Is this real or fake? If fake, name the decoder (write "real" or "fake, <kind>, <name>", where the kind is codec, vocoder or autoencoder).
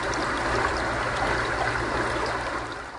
real